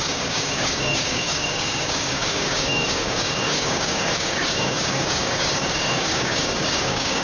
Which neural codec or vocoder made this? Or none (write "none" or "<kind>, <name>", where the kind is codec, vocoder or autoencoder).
codec, DAC